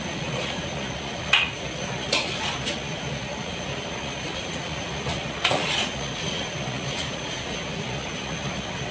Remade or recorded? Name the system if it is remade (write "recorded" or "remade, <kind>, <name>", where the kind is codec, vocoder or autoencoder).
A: remade, vocoder, Vocos